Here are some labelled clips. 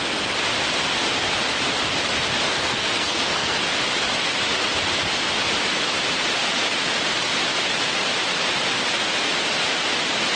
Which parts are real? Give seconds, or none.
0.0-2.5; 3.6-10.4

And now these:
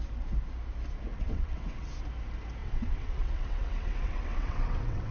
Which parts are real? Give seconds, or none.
0.0-1.1; 1.9-2.6

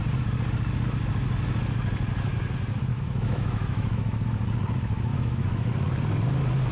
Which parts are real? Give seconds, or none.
0.0-2.9; 4.2-5.1; 5.7-6.7